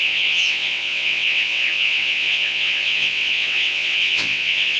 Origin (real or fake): fake